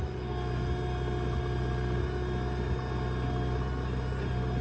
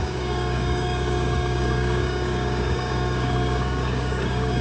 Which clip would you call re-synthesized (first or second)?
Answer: second